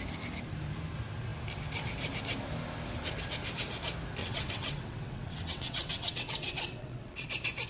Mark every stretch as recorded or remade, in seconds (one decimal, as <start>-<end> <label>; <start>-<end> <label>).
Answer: 0.0-4.2 recorded; 4.2-7.3 remade; 7.3-7.7 recorded